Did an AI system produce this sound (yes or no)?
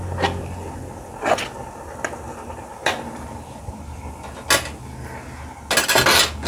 no